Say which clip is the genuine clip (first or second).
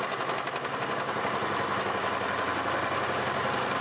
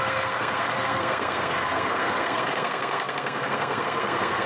first